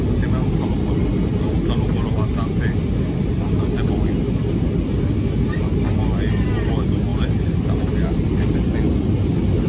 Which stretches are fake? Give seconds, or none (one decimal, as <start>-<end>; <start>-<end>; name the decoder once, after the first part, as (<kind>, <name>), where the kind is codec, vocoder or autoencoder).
none